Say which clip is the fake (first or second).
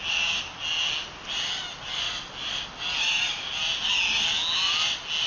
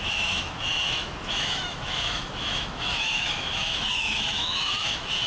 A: second